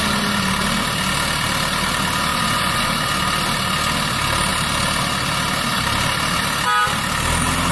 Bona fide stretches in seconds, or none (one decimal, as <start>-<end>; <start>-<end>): 0.0-2.3; 2.9-7.7